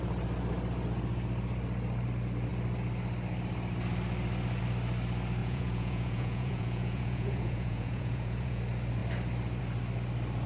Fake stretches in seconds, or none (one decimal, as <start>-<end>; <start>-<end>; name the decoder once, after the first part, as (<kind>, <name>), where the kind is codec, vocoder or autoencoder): 5.4-8.6 (vocoder, Vocos)